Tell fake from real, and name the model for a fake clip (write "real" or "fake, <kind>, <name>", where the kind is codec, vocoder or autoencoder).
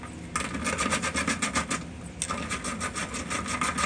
real